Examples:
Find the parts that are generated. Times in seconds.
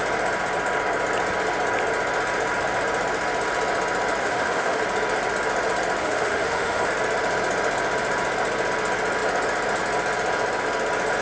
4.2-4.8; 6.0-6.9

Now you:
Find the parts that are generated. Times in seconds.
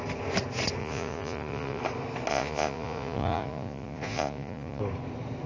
0.8-1.8; 2.3-4.8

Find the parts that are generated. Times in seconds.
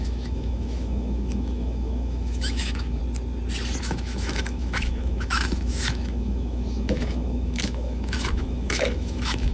0.0-3.0; 3.8-9.5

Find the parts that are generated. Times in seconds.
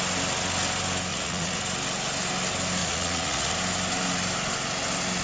1.1-1.6; 2.8-3.5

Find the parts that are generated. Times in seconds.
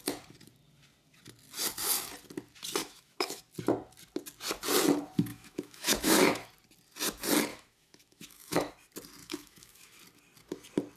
2.8-3.4; 5.3-6.5; 7.5-8.7; 9.2-10.0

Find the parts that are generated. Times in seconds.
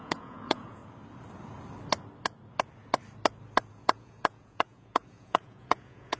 0.0-0.8; 3.7-6.2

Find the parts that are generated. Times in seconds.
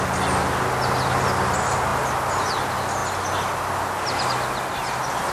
none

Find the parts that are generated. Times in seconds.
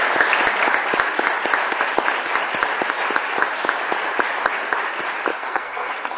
5.3-6.2